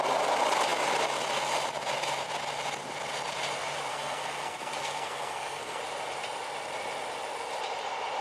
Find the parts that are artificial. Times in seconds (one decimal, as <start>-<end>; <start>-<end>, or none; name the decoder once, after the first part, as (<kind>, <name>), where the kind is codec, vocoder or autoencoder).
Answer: 3.9-5.8 (codec, SNAC)